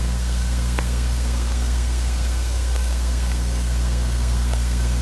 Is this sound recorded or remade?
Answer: remade